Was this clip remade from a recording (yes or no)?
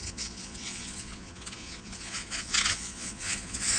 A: yes